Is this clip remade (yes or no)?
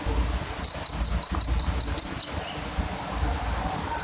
no